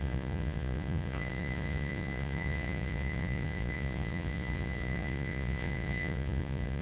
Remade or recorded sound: remade